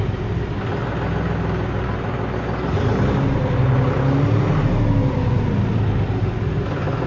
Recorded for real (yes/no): yes